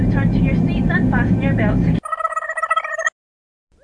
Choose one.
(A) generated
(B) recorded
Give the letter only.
B